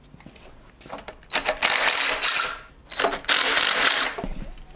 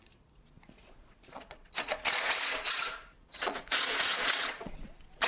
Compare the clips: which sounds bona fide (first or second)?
first